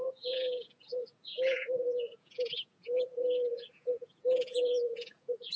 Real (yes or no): no